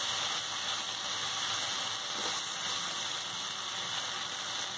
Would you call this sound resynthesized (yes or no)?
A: no